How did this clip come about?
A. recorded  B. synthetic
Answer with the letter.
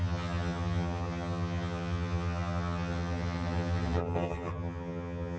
B